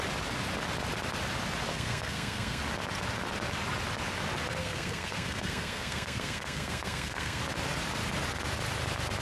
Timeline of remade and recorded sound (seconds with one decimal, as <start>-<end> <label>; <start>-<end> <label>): 0.0-1.7 recorded; 1.7-2.6 remade; 2.6-4.6 recorded; 4.6-7.4 remade; 7.4-9.2 recorded